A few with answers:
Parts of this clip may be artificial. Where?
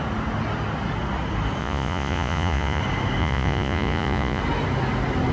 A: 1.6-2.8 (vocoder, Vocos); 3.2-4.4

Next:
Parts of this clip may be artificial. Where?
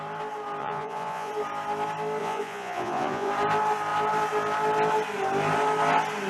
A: 0.6-1.3 (vocoder, Vocos); 2.2-3.3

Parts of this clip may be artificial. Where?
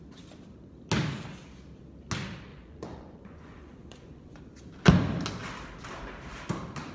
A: 2.5-4.4 (vocoder, Vocos)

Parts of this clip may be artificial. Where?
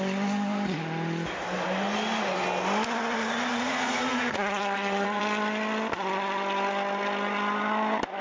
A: 3.5-5.2 (vocoder, Vocos)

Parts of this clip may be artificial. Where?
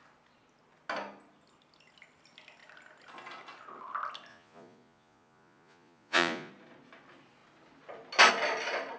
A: 4.3-6.5 (vocoder, Vocos)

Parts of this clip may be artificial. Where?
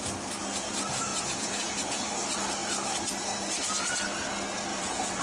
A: 1.1-2.1 (vocoder, Vocos); 4.7-5.2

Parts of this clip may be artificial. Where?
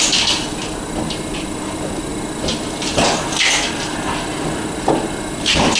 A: none